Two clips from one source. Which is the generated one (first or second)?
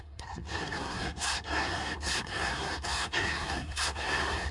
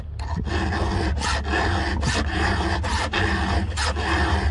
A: first